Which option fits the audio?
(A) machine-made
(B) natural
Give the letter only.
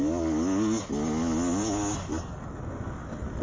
B